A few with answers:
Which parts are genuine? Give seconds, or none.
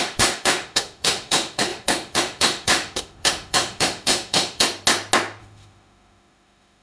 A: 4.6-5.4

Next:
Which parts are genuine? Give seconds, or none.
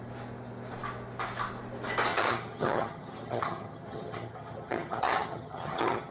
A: 0.0-2.1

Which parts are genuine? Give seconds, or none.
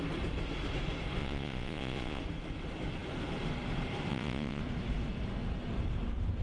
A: 0.0-1.2; 2.2-4.1; 4.6-6.4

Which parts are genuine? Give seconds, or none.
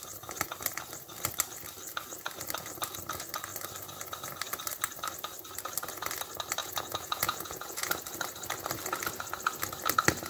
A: 0.0-6.6; 7.9-10.3